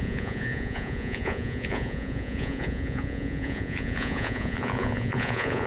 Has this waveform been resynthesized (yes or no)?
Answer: yes